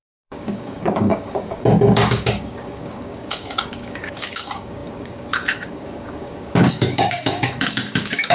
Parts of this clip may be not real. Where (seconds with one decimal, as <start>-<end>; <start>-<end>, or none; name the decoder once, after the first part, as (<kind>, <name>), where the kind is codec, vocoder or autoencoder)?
0.0-8.3 (codec, DAC)